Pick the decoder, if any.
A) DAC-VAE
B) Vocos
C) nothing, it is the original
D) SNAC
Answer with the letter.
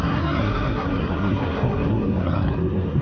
D